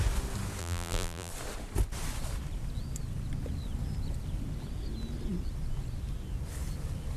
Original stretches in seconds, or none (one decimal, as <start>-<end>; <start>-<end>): 0.0-0.6; 1.3-7.2